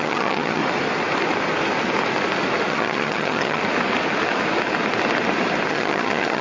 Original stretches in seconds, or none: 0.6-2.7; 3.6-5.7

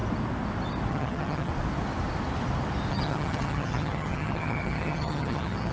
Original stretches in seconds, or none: 0.0-0.9; 1.5-2.9

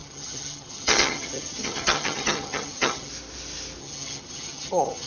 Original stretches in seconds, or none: 3.1-3.8

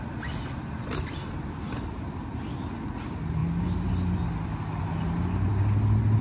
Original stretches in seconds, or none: 0.0-6.2

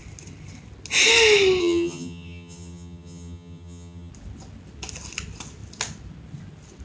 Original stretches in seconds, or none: 0.0-1.6; 4.1-6.8